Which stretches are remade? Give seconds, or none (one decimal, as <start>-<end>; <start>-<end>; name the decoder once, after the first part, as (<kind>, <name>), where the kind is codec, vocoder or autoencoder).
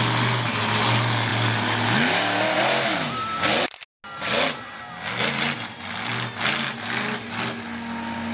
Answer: none